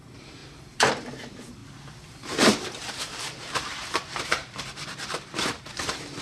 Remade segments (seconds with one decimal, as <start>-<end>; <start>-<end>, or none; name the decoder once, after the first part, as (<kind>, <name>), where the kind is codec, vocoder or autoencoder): 0.0-1.6 (vocoder, BigVGAN v2); 2.1-6.2